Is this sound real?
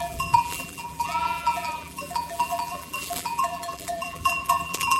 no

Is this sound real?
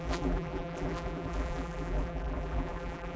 no